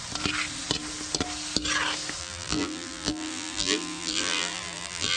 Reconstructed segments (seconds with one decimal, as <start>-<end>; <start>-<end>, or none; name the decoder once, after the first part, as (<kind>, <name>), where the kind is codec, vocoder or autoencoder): 2.2-5.2 (vocoder, BigVGAN v2)